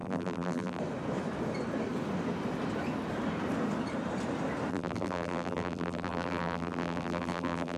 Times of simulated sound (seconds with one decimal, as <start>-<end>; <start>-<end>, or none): 0.0-0.8; 4.7-7.8